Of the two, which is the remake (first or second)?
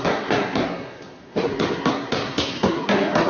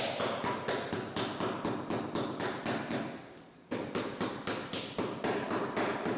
first